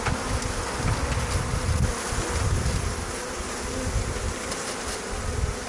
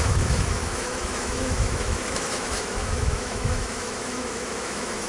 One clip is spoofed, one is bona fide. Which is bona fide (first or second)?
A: first